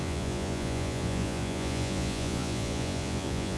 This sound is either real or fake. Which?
fake